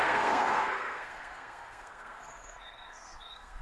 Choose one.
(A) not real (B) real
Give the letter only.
A